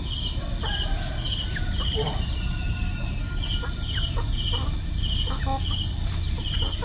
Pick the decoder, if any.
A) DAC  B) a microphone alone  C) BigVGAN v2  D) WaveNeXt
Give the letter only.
B